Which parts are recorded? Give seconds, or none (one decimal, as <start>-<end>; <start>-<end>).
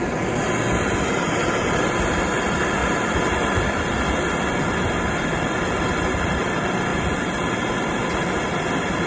0.0-9.1